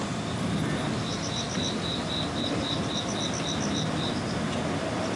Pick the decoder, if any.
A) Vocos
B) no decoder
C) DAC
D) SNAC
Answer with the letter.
B